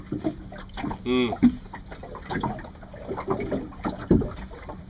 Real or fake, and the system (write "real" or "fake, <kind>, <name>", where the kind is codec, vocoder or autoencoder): real